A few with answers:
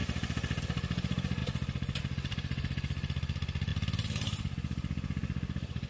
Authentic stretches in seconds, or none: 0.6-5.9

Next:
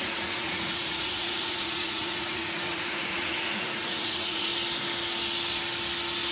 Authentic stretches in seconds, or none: 4.5-6.3

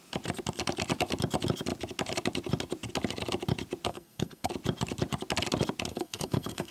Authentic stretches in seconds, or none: 0.0-3.9; 4.5-5.9